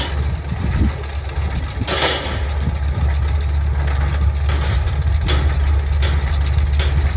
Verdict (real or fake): real